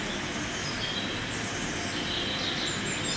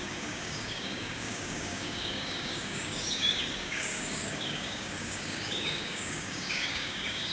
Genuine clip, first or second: first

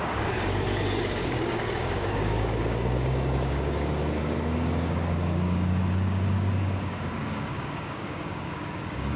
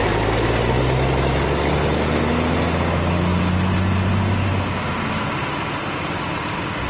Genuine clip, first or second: second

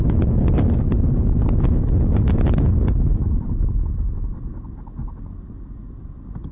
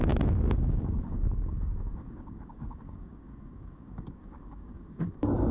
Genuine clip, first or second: first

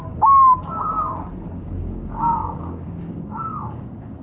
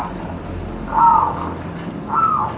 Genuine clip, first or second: second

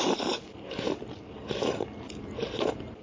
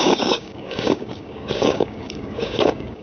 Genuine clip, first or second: first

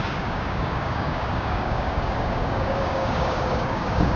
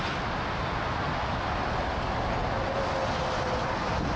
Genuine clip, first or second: second